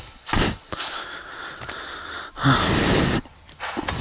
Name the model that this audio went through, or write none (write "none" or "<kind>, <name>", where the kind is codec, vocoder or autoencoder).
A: none